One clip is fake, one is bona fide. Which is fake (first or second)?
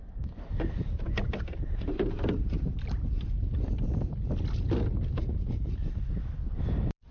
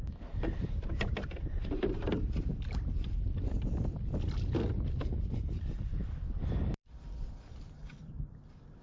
second